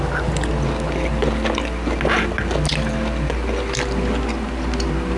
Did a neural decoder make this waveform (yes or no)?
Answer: no